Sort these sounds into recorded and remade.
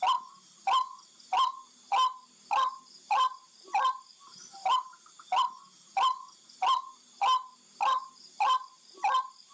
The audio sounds recorded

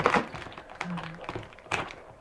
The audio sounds remade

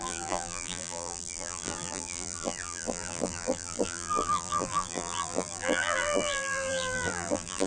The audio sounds remade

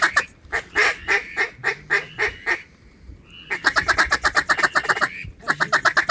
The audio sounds remade